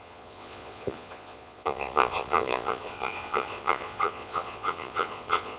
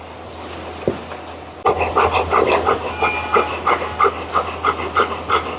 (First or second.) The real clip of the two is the second